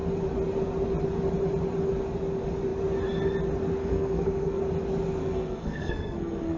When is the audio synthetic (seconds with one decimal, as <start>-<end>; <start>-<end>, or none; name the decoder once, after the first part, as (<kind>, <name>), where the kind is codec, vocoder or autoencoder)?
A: 3.8-4.7 (codec, SNAC); 5.2-6.6

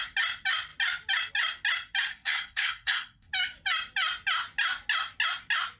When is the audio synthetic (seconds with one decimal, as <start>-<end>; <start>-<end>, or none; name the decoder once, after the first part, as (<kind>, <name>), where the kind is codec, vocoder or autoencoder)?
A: 2.1-3.3 (codec, SNAC)

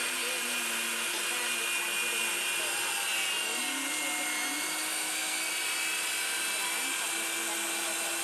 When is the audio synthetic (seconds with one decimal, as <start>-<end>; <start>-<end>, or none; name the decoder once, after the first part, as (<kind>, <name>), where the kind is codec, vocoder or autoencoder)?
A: 4.9-5.5 (codec, SNAC)